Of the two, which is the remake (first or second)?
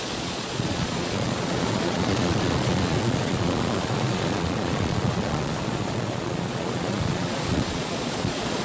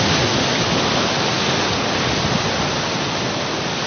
first